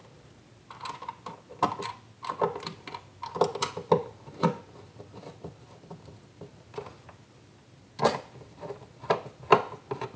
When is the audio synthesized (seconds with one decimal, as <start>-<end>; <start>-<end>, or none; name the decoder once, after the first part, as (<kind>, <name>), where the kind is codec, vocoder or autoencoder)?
none